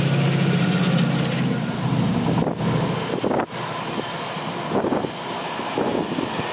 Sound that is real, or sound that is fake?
real